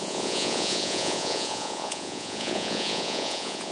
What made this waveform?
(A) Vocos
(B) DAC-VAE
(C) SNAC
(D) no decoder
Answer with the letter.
A